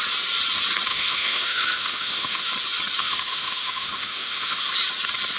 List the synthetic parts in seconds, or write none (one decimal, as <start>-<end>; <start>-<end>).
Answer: 0.9-2.5; 3.0-4.7